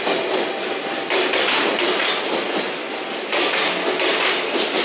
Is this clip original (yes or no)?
yes